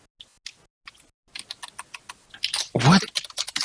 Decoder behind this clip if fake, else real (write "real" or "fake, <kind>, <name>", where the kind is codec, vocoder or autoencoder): real